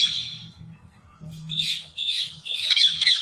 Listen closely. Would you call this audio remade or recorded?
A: remade